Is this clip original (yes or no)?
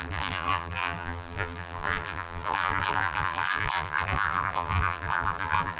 no